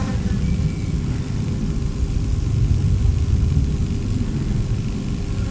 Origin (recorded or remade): recorded